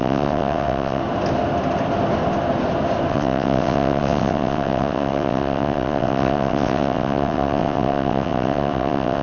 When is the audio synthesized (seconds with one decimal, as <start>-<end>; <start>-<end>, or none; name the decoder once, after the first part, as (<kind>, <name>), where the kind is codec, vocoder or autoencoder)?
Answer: 0.0-1.0 (vocoder, WaveNeXt); 3.1-9.2